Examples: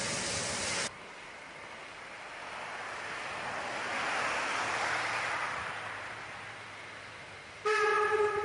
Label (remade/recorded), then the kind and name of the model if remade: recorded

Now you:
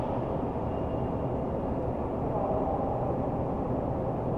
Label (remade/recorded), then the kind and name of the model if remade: recorded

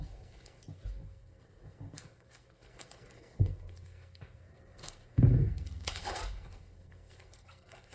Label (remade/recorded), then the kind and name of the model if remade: remade, codec, SNAC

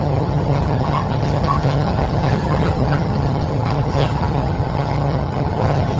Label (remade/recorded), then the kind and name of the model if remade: remade, vocoder, HiFi-GAN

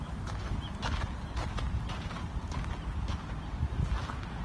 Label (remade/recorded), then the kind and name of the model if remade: recorded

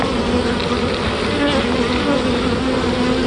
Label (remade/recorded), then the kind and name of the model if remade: recorded